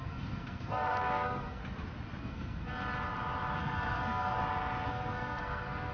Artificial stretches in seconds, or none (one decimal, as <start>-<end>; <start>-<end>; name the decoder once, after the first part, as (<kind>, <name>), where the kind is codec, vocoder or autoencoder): 0.0-1.6 (codec, SNAC); 2.2-2.7; 3.6-4.4; 4.9-5.9